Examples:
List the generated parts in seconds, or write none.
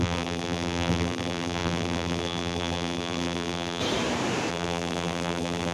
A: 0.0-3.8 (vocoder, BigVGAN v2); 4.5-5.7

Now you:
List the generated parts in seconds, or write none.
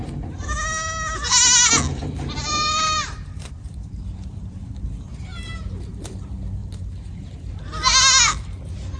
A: 1.9-4.7 (vocoder, BigVGAN v2); 5.3-5.9; 6.6-7.6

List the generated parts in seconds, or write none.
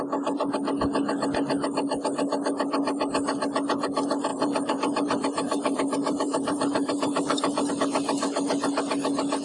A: 4.3-7.7 (vocoder, BigVGAN v2)